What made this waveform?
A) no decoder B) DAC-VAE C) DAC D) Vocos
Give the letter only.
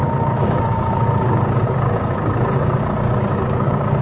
C